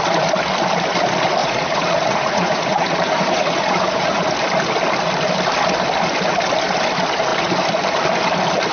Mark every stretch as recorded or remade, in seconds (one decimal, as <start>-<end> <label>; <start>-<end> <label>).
0.0-1.4 recorded; 1.4-4.3 remade; 4.3-8.7 recorded